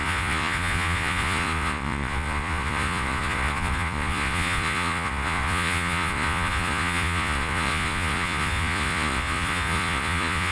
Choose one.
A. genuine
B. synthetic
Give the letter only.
B